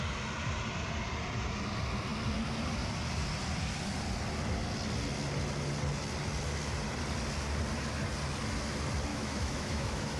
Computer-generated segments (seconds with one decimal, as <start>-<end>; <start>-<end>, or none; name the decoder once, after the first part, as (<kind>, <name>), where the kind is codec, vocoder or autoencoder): 9.1-10.2 (autoencoder, DAC-VAE)